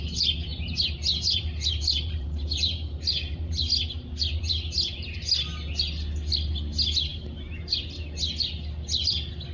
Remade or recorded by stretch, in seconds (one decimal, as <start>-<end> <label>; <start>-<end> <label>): 0.0-0.5 recorded; 0.5-3.3 remade; 3.3-7.1 recorded; 7.1-7.8 remade; 7.8-9.5 recorded